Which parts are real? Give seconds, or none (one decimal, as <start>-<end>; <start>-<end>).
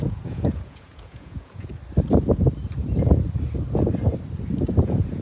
1.7-4.8